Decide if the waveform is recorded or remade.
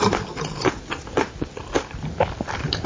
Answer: recorded